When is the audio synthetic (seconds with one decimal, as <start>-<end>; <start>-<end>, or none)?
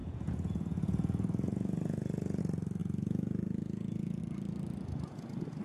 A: 0.0-2.4; 2.8-4.2